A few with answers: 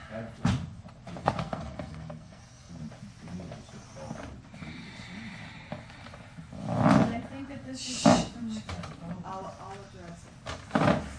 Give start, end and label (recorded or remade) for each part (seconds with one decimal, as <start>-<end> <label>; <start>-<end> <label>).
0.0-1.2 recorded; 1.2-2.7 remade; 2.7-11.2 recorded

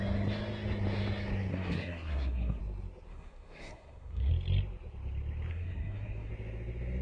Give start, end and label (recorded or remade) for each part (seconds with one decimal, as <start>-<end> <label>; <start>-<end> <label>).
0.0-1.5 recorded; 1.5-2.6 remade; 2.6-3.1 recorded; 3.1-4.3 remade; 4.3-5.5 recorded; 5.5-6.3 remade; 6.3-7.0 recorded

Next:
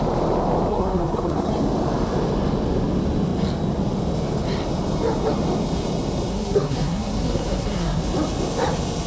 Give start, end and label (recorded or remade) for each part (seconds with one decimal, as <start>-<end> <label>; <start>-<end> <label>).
0.0-0.7 recorded; 0.7-1.5 remade; 1.5-6.3 recorded; 6.3-8.0 remade; 8.0-9.1 recorded

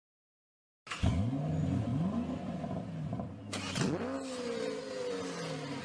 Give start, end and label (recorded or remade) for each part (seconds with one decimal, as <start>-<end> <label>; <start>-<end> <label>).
0.0-5.8 recorded

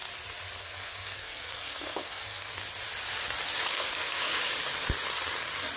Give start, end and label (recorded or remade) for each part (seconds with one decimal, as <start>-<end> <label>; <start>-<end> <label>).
0.0-0.6 recorded; 0.6-2.5 remade; 2.5-3.6 recorded; 3.6-4.4 remade; 4.4-5.8 recorded

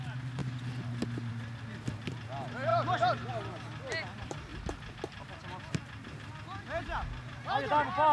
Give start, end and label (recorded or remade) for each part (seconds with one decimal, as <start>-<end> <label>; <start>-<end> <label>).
0.0-8.1 recorded